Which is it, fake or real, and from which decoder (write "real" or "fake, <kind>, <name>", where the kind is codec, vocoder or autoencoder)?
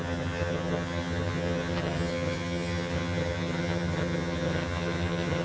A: fake, vocoder, HiFi-GAN